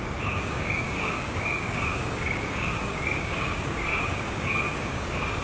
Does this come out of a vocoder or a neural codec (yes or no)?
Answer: yes